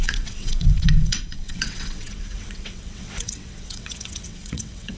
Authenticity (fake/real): fake